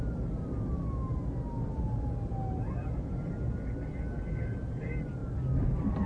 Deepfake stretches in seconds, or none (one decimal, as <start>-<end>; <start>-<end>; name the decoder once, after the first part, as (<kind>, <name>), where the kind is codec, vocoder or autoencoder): none